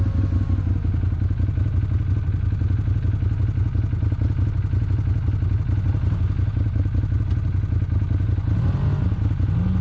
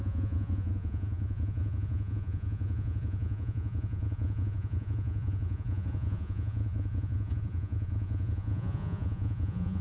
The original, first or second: first